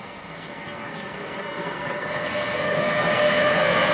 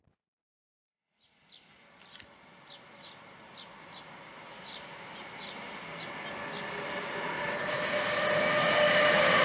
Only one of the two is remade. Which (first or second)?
first